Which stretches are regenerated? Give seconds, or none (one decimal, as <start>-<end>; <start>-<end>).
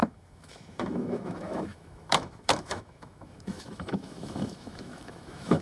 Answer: 0.0-5.6